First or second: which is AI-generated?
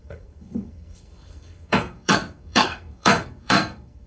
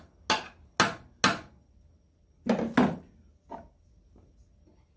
first